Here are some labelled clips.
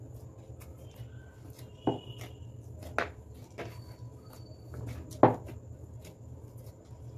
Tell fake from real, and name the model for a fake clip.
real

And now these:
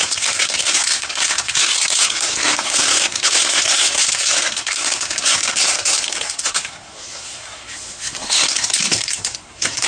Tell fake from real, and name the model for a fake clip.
fake, codec, SNAC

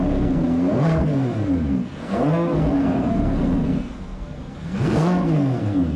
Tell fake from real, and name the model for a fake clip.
fake, codec, SNAC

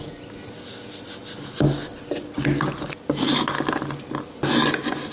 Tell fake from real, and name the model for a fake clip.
real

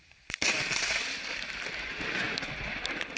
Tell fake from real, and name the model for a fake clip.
real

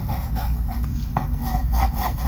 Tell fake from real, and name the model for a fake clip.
fake, codec, SNAC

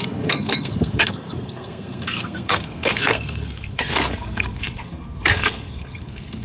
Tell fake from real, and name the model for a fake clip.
fake, codec, SNAC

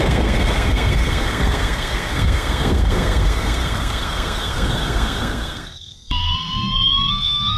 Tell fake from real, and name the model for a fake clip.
fake, codec, SNAC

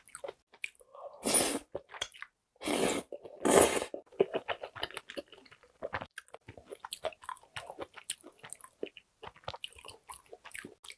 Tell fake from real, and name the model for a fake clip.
real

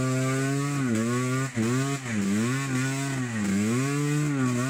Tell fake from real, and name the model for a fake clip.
real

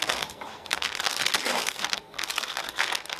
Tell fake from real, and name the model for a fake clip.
fake, codec, SNAC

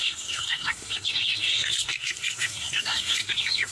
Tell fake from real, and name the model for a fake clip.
fake, codec, SNAC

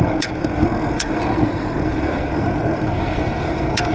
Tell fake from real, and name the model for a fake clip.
fake, codec, SNAC